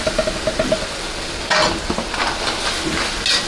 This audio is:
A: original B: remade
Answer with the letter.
A